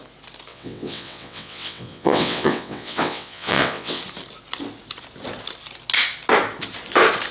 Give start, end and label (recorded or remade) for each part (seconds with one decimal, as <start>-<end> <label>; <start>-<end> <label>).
0.0-0.5 recorded; 0.5-4.0 remade; 4.0-7.3 recorded